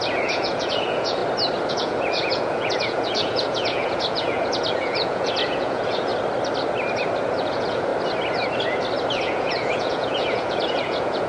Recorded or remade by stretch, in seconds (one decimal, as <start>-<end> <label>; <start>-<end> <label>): 0.0-1.2 remade; 1.2-1.7 recorded; 1.7-6.1 remade; 6.1-7.4 recorded; 7.4-7.9 remade; 7.9-9.2 recorded; 9.2-11.3 remade